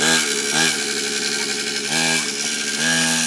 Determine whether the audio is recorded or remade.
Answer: recorded